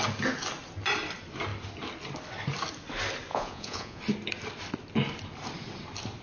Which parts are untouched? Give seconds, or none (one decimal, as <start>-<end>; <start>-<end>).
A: 0.0-3.3; 4.0-6.2